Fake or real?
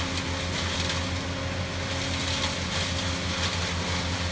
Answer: real